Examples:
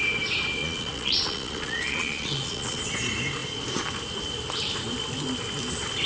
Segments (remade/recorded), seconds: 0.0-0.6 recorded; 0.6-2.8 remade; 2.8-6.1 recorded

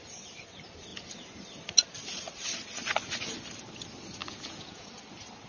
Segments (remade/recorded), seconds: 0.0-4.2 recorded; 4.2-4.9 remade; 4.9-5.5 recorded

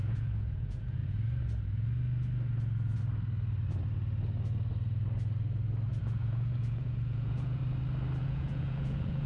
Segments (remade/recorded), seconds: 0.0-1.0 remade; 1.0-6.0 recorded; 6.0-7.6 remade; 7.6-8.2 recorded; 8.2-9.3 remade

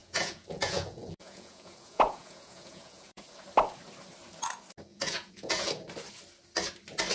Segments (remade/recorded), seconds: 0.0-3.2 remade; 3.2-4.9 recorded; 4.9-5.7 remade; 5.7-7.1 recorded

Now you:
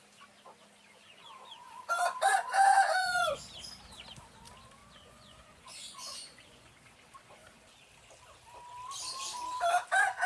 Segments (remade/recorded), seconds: 0.0-0.9 recorded; 0.9-3.4 remade; 3.4-4.8 recorded; 4.8-6.7 remade; 6.7-10.3 recorded